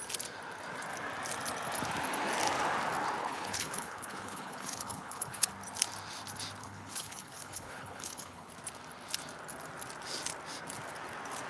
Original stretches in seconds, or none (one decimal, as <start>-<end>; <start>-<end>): 0.0-3.2; 5.5-6.6; 8.5-11.5